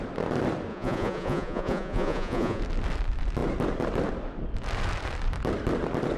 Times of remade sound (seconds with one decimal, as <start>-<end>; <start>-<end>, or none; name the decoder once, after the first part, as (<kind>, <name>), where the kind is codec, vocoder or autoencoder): 0.7-2.6 (vocoder, Vocos)